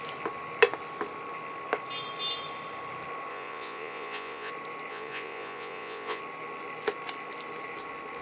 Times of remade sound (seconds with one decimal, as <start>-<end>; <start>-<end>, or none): 3.3-4.5; 4.9-6.2